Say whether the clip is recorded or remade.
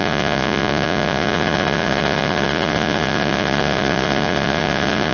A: remade